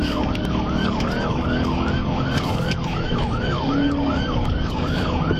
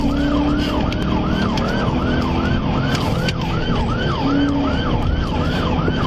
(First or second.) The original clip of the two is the second